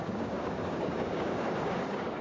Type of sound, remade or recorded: remade